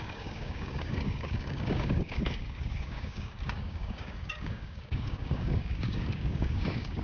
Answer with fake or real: fake